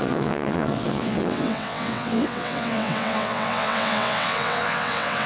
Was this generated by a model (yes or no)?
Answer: yes